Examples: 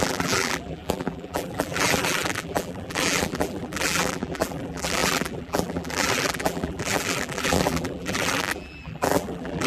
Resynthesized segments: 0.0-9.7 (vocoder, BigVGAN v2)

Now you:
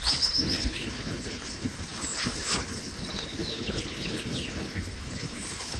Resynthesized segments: 0.0-5.8 (codec, HILCodec)

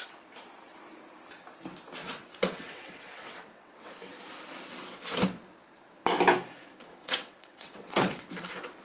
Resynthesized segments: 2.0-3.9 (vocoder, WaveNeXt); 7.0-8.3